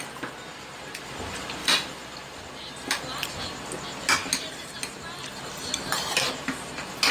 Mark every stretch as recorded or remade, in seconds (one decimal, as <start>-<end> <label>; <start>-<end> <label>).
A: 0.0-1.6 recorded; 1.6-3.3 remade; 3.3-7.1 recorded